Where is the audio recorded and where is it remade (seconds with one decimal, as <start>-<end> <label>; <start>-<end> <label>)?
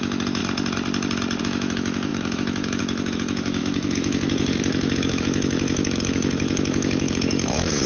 0.0-0.4 remade; 0.4-1.4 recorded; 1.4-7.9 remade